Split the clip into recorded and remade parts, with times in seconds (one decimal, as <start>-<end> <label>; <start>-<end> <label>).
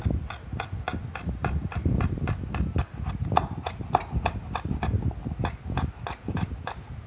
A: 0.0-1.4 recorded; 1.4-2.4 remade; 2.4-7.1 recorded